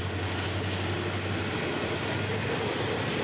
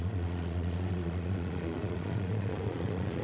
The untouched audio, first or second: first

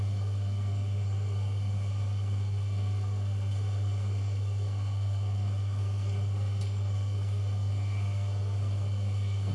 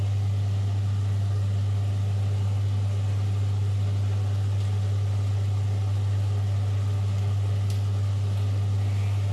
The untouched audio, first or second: second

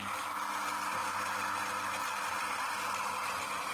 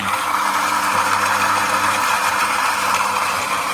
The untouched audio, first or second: first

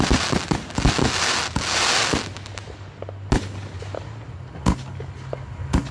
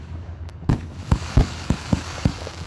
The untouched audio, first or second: first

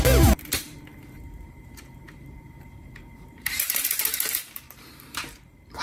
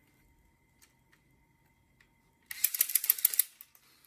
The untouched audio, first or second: second